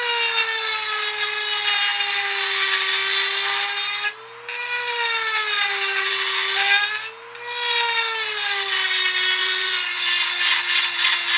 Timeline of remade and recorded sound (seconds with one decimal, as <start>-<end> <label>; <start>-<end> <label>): 0.0-9.4 recorded; 9.4-10.0 remade; 10.0-11.4 recorded